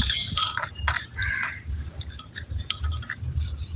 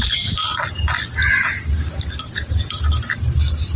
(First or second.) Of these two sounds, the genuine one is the second